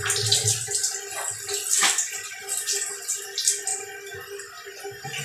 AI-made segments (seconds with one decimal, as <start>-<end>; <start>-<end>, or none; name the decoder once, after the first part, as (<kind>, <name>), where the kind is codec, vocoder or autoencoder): none